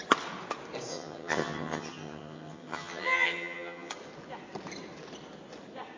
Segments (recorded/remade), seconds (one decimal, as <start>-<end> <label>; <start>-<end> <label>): 0.0-0.9 recorded; 0.9-3.9 remade; 3.9-6.0 recorded